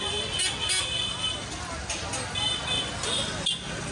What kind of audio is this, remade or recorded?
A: recorded